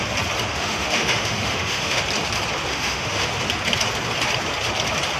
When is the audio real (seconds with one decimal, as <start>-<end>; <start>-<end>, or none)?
0.0-0.5; 2.0-2.7; 3.4-5.2